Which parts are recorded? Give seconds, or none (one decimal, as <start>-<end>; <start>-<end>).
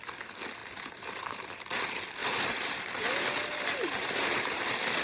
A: 0.0-0.6; 1.6-2.2; 4.6-5.0